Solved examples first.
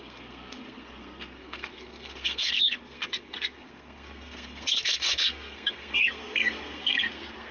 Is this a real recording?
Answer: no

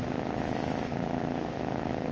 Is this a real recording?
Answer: no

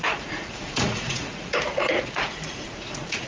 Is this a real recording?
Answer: no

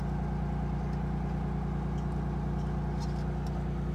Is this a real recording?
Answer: yes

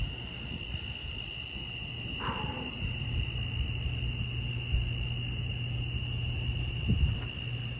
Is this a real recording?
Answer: yes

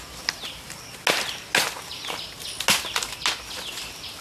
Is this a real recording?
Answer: yes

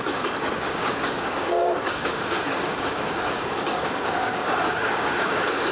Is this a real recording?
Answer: no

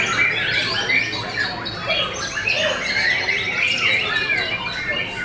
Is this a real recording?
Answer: yes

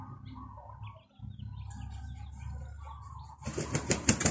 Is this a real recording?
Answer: yes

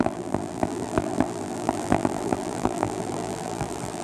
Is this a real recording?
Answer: no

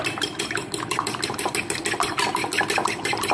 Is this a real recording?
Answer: no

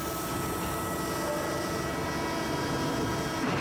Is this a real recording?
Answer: yes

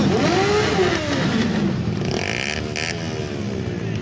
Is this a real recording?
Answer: yes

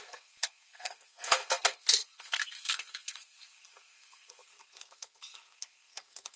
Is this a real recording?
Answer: no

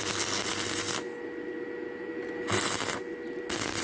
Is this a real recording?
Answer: yes